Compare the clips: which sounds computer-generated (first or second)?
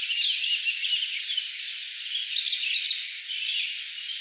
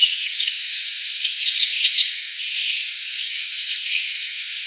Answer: second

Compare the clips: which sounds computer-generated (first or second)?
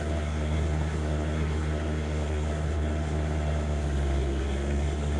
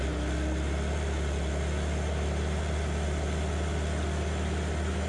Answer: first